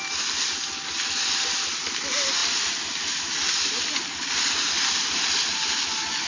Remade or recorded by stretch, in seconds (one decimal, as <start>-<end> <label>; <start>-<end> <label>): 0.0-6.3 recorded